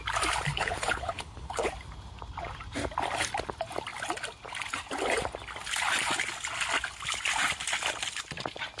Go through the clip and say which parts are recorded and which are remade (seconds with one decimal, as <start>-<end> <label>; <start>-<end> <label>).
0.0-0.5 recorded; 0.5-1.7 remade; 1.7-8.8 recorded